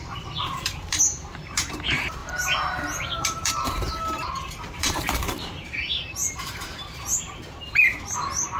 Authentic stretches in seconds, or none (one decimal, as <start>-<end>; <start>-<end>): none